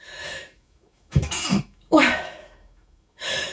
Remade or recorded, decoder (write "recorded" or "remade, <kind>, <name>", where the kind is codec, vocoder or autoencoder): remade, autoencoder, DAC-VAE